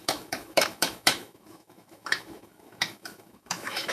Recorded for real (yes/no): no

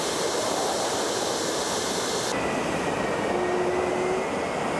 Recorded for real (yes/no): yes